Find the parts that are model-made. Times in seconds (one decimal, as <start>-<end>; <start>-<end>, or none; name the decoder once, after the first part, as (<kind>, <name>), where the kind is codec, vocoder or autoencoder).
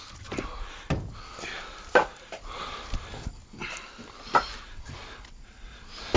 none